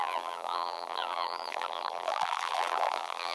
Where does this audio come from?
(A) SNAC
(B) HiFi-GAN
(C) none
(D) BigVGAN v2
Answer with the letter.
D